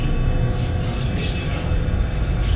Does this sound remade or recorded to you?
recorded